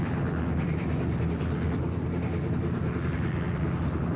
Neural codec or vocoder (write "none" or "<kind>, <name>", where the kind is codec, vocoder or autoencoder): none